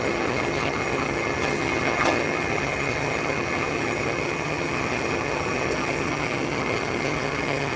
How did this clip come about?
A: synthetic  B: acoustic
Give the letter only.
A